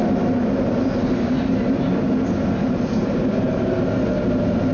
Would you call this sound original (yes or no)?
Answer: yes